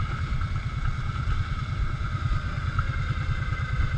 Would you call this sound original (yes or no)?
yes